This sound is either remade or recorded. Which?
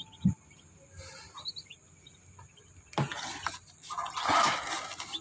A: recorded